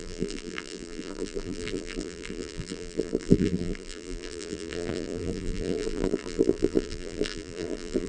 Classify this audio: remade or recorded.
remade